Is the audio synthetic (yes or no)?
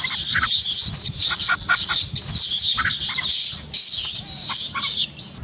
no